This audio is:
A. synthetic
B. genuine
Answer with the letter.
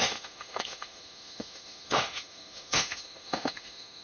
A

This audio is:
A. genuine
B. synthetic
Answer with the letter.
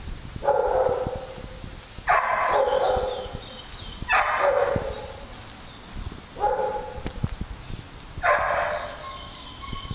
A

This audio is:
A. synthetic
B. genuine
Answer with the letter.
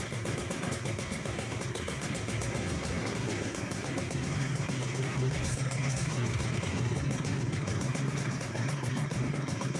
A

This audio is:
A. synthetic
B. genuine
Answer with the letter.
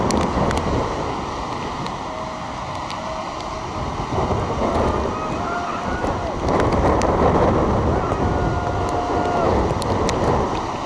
B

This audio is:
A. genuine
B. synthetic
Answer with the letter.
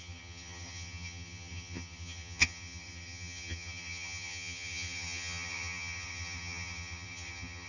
B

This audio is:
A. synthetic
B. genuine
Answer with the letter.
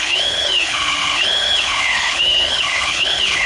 A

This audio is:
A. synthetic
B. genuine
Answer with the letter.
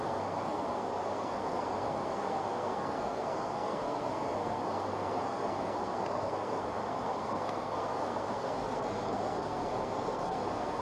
A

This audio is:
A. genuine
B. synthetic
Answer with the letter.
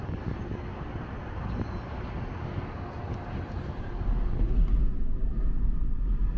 A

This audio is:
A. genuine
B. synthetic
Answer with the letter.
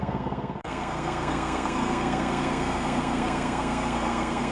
B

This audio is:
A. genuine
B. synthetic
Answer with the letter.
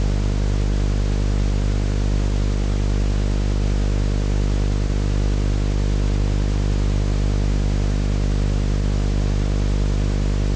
A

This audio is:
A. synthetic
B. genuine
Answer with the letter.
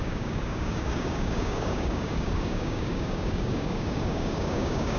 A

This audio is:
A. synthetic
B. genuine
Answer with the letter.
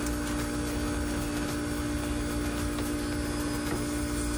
B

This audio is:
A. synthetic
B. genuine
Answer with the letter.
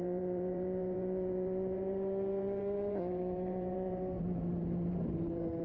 A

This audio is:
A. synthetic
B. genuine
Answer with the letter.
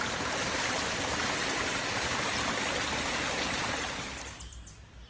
B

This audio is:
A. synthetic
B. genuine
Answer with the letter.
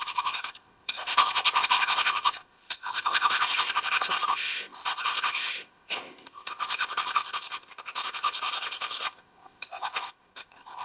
A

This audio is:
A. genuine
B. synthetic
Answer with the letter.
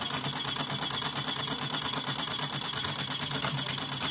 A